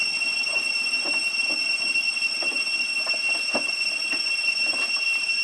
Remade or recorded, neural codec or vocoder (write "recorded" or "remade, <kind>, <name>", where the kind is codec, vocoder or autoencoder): recorded